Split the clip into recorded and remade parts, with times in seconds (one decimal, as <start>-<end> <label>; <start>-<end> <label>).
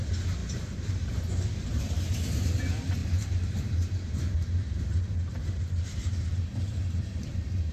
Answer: 0.0-0.4 recorded; 0.4-1.1 remade; 1.1-1.7 recorded; 1.7-2.6 remade; 2.6-3.0 recorded; 3.0-7.7 remade